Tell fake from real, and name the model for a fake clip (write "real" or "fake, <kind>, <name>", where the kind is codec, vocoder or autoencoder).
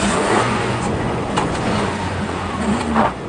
fake, vocoder, Vocos